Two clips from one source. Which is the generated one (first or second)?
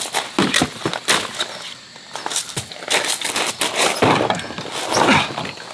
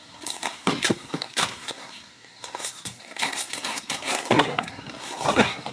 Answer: second